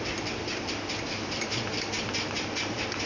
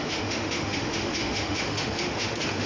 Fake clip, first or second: second